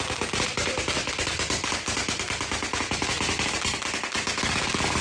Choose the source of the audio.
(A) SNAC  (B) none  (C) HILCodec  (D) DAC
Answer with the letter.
B